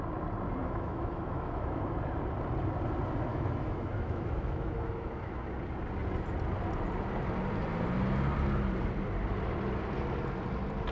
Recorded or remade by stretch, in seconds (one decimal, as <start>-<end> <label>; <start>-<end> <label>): 0.0-0.6 recorded; 0.6-1.8 remade; 1.8-3.3 recorded; 3.3-5.4 remade; 5.4-10.9 recorded